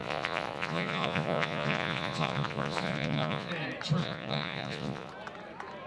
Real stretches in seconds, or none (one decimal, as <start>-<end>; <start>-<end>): 3.5-4.0; 5.1-5.9